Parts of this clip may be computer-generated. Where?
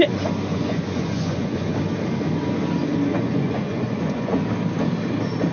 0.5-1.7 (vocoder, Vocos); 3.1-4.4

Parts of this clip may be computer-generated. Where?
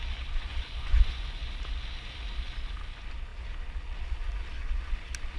0.5-1.4 (vocoder, Vocos)